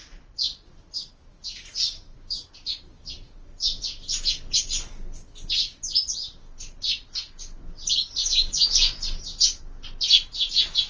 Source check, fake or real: real